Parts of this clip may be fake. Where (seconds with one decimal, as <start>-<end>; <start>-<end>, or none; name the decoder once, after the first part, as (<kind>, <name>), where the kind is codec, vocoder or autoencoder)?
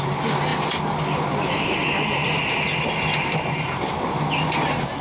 none